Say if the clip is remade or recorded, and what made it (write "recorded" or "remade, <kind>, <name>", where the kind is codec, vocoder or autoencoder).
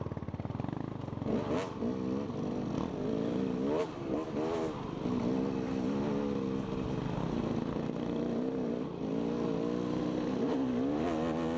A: recorded